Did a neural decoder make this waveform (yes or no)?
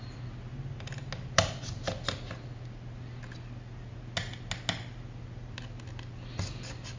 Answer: no